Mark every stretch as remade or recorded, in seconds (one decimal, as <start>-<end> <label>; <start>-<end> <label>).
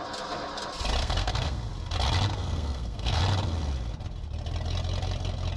0.0-1.0 recorded; 1.0-1.7 remade; 1.7-2.3 recorded; 2.3-3.2 remade; 3.2-5.6 recorded